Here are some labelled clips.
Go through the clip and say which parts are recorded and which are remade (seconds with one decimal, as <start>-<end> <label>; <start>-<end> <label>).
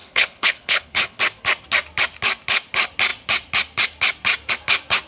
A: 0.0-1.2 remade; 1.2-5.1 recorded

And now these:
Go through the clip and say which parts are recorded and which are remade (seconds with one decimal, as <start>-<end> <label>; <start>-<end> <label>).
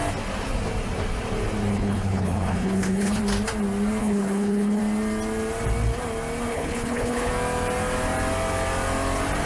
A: 0.0-1.7 recorded; 1.7-3.2 remade; 3.2-4.0 recorded; 4.0-4.8 remade; 4.8-6.5 recorded; 6.5-7.3 remade; 7.3-9.5 recorded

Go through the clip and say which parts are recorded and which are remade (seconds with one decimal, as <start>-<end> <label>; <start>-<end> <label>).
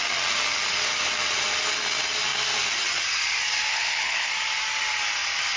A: 0.0-3.7 recorded; 3.7-4.3 remade; 4.3-5.6 recorded